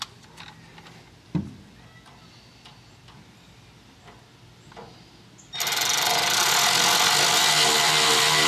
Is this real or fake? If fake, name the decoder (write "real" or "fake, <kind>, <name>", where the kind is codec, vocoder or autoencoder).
real